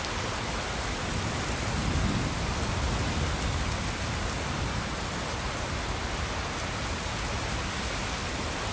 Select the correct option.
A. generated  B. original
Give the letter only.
B